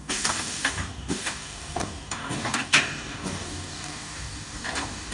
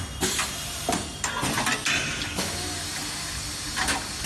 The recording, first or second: second